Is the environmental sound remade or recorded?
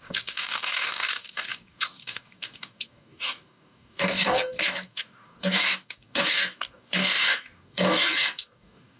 remade